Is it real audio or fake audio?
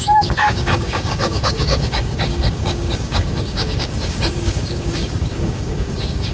fake